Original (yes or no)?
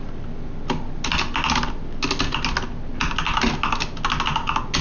yes